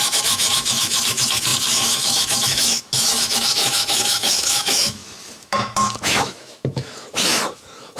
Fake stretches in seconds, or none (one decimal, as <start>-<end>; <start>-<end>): 0.0-8.0